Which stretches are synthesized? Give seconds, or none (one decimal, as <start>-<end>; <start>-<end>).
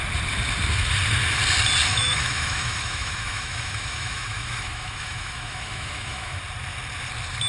1.9-6.4